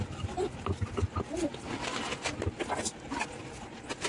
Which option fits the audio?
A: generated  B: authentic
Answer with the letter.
B